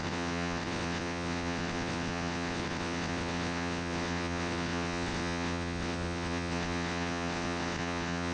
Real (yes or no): no